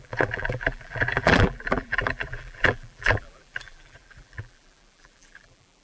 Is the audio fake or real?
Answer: fake